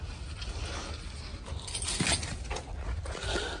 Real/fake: real